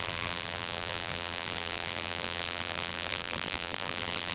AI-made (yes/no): yes